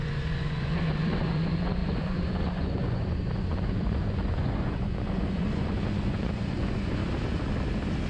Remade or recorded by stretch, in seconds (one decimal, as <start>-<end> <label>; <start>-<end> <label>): 0.0-7.0 remade; 7.0-8.1 recorded